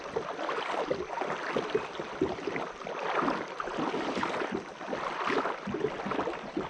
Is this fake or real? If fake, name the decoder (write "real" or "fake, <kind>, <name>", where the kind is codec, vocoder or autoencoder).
real